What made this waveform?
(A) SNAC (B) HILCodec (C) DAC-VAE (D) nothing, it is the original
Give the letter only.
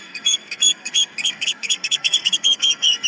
A